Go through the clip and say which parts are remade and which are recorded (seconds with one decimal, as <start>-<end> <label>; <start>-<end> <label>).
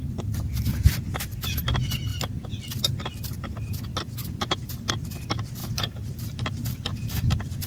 0.0-3.9 recorded; 3.9-4.9 remade; 4.9-5.6 recorded; 5.6-7.7 remade